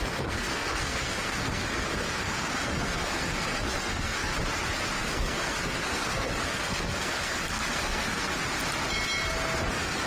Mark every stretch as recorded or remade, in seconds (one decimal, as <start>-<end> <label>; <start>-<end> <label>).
0.0-4.3 remade; 4.3-5.0 recorded; 5.0-8.3 remade; 8.3-9.7 recorded; 9.7-10.1 remade